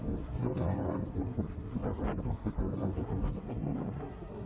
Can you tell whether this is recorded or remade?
remade